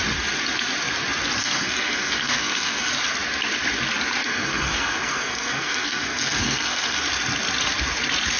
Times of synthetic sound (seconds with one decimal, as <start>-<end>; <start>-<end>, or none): 1.4-2.9; 4.2-7.0